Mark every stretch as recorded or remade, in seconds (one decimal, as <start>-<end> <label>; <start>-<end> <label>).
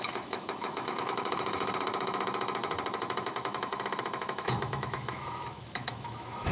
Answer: 0.0-6.5 remade